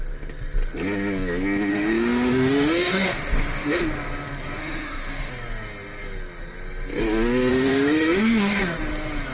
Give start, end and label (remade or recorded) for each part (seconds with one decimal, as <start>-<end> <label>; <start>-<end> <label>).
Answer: 0.0-1.7 recorded; 1.7-3.8 remade; 3.8-4.6 recorded; 4.6-5.3 remade; 5.3-7.5 recorded; 7.5-8.6 remade; 8.6-9.3 recorded